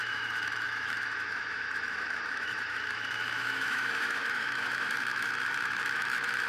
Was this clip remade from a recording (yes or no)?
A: yes